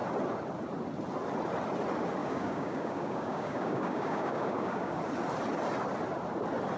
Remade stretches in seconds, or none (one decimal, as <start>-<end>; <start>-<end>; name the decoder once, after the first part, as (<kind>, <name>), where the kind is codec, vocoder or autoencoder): 2.2-5.0 (codec, DAC)